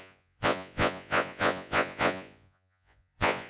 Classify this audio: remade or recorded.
remade